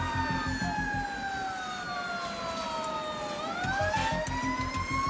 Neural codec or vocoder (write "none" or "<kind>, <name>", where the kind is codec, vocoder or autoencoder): none